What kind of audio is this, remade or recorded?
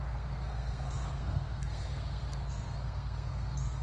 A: remade